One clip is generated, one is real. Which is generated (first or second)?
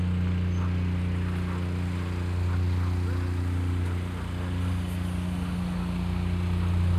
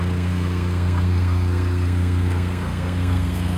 second